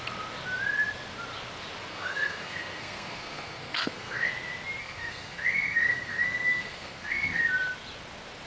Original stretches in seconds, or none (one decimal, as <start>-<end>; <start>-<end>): 0.0-1.9; 4.3-4.8; 7.4-8.5